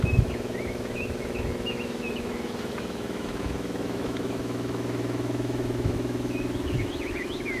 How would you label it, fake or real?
fake